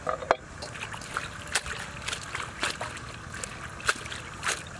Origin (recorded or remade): recorded